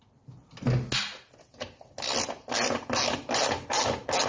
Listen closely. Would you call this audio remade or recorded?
recorded